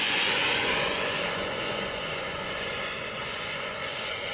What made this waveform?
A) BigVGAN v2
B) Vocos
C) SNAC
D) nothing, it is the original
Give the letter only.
B